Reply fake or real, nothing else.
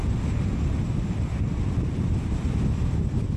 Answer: real